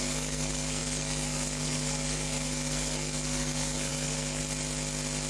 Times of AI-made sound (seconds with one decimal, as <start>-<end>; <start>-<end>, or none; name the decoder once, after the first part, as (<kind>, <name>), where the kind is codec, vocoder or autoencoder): 0.0-4.4 (codec, SNAC)